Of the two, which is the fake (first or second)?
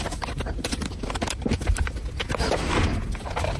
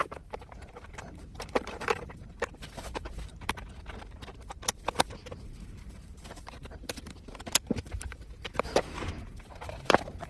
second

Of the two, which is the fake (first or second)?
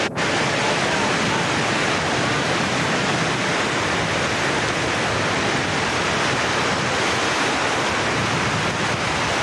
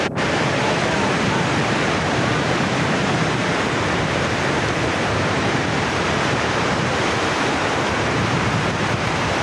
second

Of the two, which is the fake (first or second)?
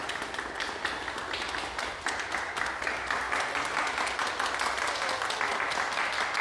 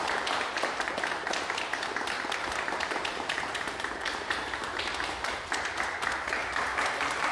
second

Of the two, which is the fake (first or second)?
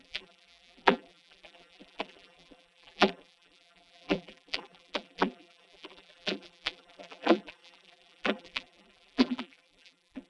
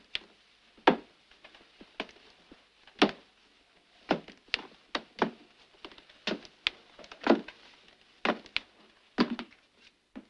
first